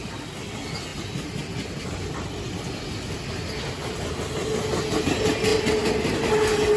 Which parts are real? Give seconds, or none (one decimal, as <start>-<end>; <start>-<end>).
0.0-6.8